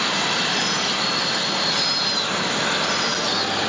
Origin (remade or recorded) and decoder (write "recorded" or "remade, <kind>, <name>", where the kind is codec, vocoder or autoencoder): recorded